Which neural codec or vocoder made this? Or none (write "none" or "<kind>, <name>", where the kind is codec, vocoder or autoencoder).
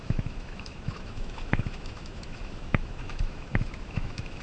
autoencoder, DAC-VAE